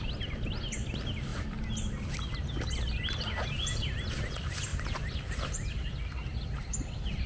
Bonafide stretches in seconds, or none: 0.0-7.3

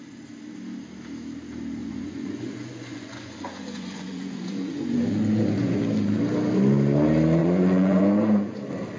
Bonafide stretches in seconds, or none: 0.0-1.8; 5.8-7.4; 8.5-9.0

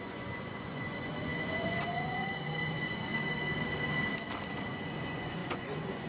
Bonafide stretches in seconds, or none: 3.1-4.7

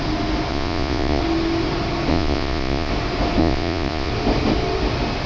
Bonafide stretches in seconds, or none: 0.0-0.5; 1.2-2.1; 2.9-3.4; 4.1-5.3

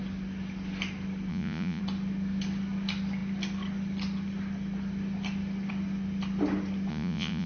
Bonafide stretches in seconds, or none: 0.0-1.3; 1.8-6.9

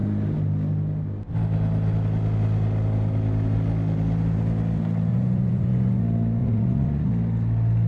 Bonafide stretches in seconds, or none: 0.0-5.1; 6.0-6.4; 7.1-7.9